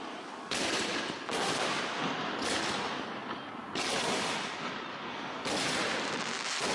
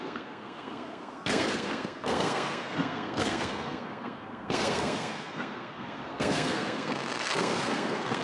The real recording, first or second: first